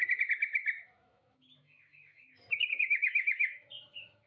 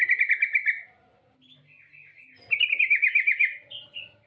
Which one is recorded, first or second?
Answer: second